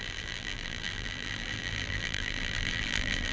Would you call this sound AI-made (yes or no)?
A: yes